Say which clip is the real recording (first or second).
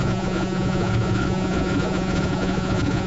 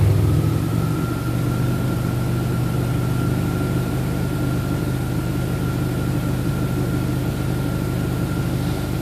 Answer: second